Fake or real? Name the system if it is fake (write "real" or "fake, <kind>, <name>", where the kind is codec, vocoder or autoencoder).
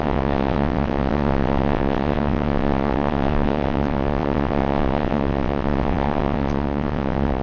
fake, vocoder, WaveNeXt